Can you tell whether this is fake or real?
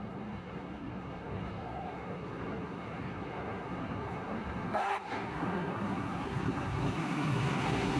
fake